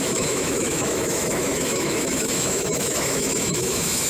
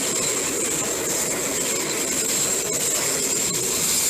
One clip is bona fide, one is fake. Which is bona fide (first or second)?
second